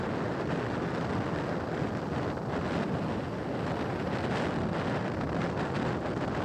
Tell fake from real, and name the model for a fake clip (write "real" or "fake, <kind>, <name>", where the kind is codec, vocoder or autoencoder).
real